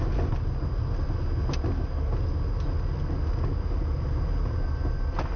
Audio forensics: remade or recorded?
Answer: recorded